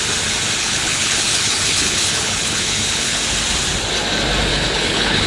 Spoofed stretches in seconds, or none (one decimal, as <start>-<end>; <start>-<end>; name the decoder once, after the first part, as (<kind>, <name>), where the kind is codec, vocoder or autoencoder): 0.6-3.2 (codec, HILCodec); 4.5-5.3